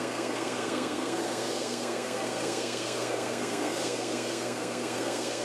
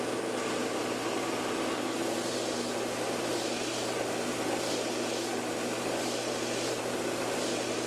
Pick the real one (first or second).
second